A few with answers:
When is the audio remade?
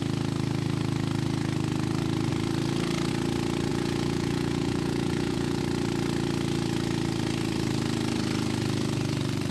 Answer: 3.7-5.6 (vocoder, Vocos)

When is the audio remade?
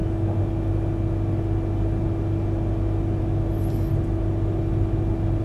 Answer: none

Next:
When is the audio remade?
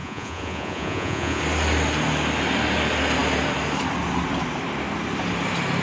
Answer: 0.0-1.4 (vocoder, Vocos)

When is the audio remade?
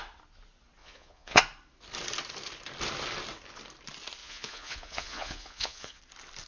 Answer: 0.8-1.4 (vocoder, Vocos); 4.2-6.0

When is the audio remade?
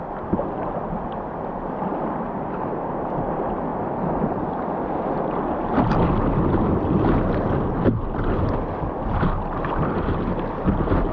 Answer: none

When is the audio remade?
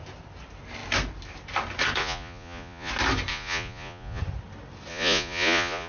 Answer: 2.0-2.9 (vocoder, Vocos); 3.3-4.2; 4.9-5.9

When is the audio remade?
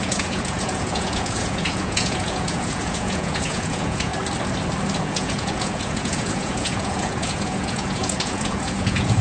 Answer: 0.0-4.1 (vocoder, Vocos); 5.0-9.2